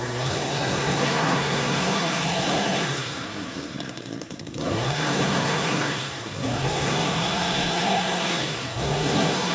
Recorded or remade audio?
remade